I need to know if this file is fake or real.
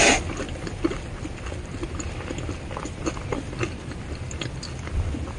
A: real